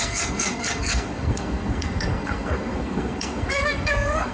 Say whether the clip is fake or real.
fake